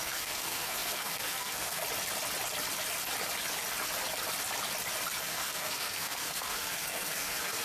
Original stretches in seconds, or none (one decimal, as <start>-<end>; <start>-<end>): 1.8-5.2